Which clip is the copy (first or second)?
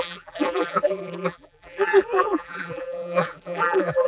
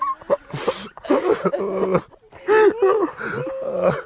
first